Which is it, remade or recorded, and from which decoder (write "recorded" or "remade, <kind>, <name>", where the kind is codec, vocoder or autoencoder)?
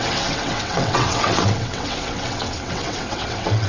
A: remade, vocoder, WaveNeXt